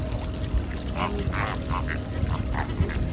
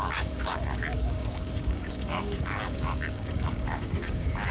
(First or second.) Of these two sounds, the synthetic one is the second